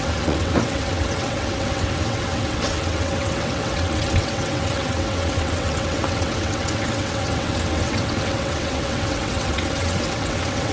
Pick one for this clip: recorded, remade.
remade